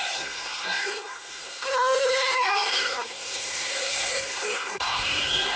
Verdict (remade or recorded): remade